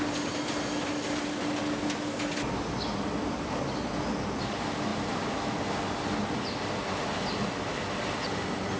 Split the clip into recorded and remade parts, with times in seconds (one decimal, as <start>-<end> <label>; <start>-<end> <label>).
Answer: 0.0-8.8 recorded